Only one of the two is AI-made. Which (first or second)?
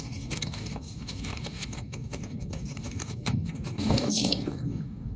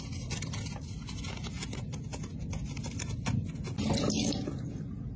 first